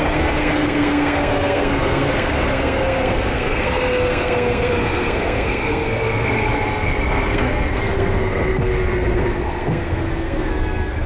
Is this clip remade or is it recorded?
remade